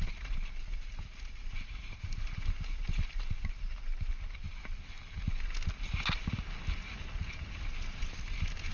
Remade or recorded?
recorded